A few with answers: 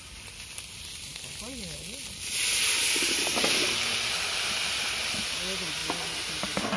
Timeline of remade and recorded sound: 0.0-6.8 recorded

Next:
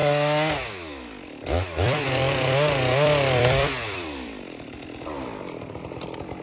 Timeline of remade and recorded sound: 0.0-1.3 recorded; 1.3-6.4 remade

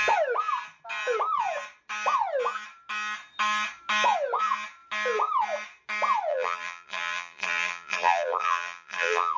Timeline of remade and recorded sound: 0.0-6.3 recorded; 6.3-9.4 remade